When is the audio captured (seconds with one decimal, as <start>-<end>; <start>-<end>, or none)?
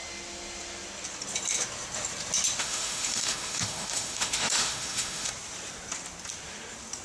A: 0.0-2.6; 5.3-7.0